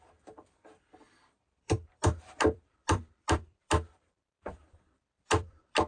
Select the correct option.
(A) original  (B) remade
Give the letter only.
B